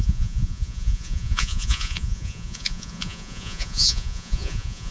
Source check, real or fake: fake